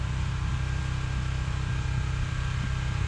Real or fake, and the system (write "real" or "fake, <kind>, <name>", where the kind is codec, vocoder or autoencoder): real